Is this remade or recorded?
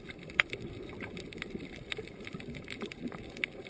recorded